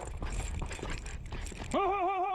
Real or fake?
fake